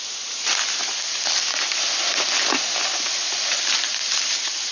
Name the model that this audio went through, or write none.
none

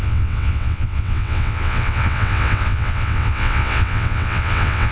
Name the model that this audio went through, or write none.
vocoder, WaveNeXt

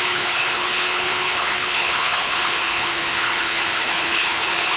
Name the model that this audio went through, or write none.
codec, HILCodec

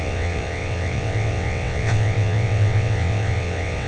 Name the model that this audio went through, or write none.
vocoder, WaveNeXt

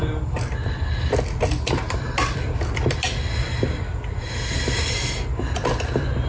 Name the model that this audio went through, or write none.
none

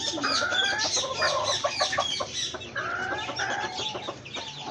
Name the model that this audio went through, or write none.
vocoder, BigVGAN v2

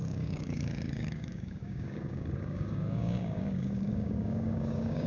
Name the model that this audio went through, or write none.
codec, DAC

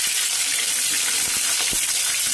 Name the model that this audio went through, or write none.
vocoder, BigVGAN v2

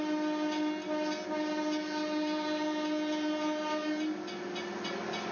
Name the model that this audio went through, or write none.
none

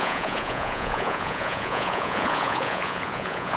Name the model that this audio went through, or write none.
vocoder, Vocos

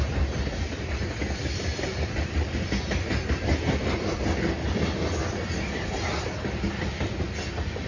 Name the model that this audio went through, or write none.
none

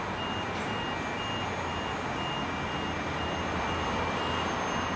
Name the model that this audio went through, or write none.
none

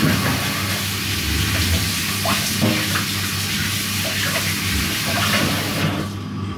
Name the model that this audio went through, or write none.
none